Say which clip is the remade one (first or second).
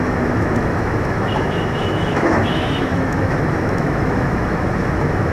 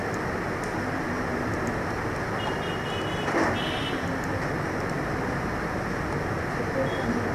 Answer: first